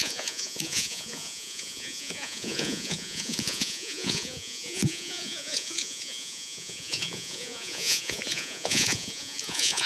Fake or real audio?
fake